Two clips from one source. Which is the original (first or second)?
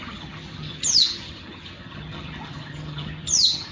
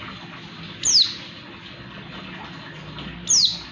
second